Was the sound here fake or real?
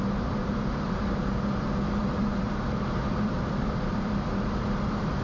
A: fake